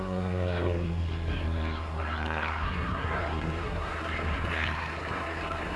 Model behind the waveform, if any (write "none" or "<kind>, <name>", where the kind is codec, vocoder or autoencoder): codec, SNAC